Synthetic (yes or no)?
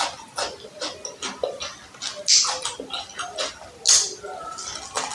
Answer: no